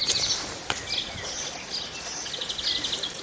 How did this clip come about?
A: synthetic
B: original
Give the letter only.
B